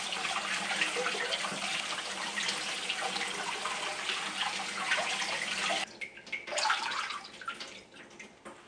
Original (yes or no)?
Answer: yes